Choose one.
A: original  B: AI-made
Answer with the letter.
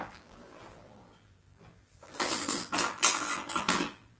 B